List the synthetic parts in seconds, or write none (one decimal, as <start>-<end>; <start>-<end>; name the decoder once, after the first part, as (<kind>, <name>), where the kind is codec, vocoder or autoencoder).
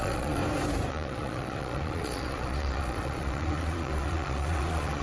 0.0-0.4 (vocoder, Vocos); 0.9-5.0